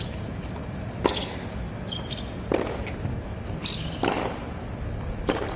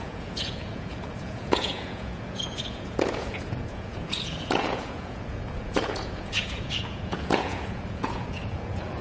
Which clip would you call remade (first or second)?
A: second